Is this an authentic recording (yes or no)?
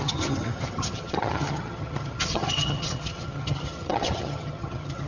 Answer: no